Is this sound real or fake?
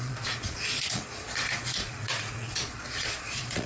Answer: fake